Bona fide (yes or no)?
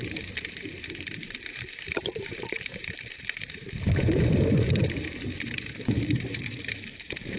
no